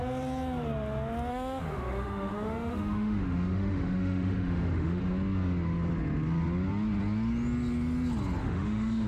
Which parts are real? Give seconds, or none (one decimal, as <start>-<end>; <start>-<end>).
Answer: 0.0-1.3; 5.0-8.4